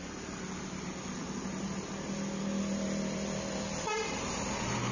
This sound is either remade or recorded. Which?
recorded